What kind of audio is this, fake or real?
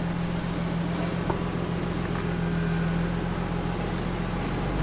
real